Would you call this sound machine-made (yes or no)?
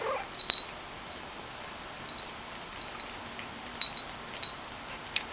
no